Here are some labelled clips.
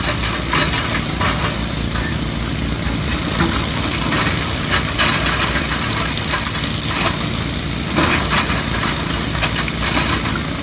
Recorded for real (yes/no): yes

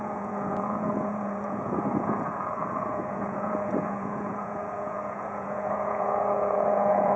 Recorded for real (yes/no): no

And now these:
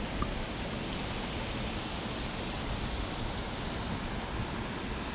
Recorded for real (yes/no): yes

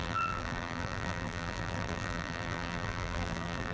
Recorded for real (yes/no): no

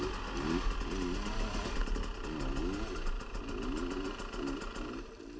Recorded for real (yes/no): yes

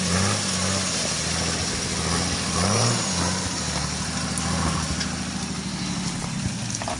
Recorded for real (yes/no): yes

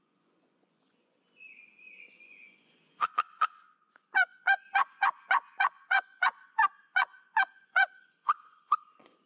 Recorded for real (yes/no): no